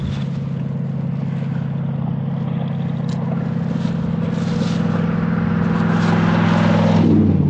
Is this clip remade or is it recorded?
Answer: recorded